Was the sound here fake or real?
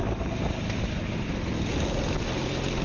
real